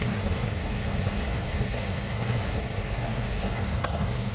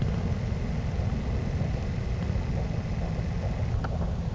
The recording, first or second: second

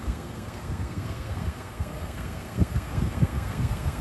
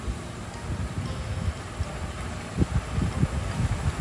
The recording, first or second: second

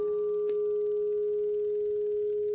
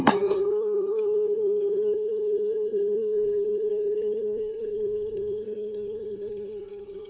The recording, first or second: first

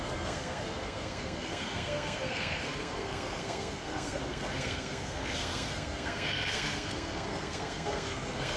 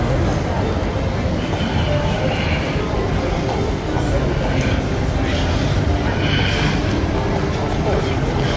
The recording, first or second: second